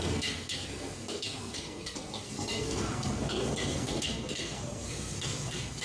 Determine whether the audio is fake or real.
fake